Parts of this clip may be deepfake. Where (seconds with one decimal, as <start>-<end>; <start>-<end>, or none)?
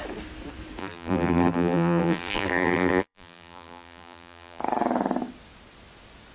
0.8-4.6